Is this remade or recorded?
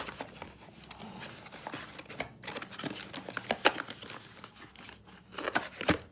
recorded